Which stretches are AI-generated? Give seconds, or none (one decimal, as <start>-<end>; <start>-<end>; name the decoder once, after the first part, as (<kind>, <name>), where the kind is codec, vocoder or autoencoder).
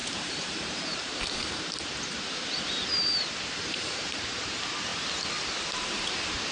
0.0-4.9 (vocoder, BigVGAN v2); 5.8-6.5